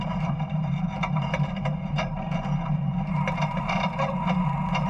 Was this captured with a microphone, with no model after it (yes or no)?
no